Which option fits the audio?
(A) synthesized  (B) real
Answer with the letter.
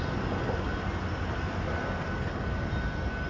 B